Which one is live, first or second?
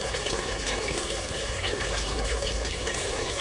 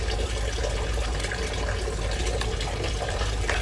second